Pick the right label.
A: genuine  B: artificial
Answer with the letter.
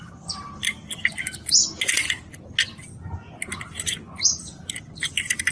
A